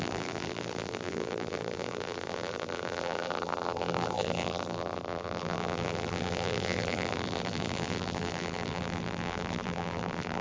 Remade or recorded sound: remade